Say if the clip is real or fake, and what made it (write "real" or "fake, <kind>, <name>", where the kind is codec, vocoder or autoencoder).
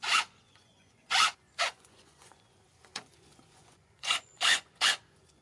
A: fake, vocoder, Vocos